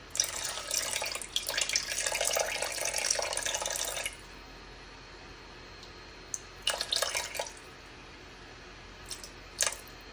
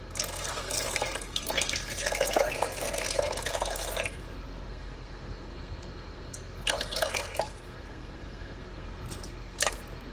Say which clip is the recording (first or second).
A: first